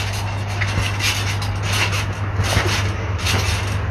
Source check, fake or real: real